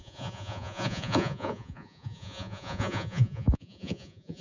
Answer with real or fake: fake